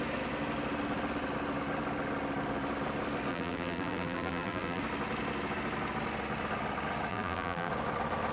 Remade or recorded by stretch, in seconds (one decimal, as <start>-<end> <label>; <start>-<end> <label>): 0.0-3.3 recorded; 3.3-4.8 remade; 4.8-7.1 recorded; 7.1-7.7 remade; 7.7-8.3 recorded